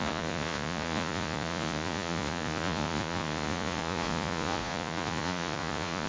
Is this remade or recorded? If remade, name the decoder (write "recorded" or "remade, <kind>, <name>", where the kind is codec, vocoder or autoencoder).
remade, vocoder, Vocos